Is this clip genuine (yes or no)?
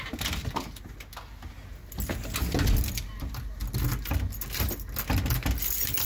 yes